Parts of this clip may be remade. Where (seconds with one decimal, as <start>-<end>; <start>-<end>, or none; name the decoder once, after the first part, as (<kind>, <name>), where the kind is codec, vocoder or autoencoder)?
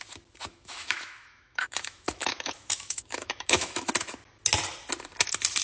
0.5-3.9 (autoencoder, DAC-VAE)